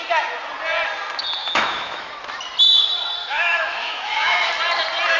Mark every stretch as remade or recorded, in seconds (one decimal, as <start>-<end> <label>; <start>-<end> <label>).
0.0-1.4 recorded; 1.4-2.1 remade; 2.1-3.2 recorded; 3.2-4.5 remade; 4.5-5.2 recorded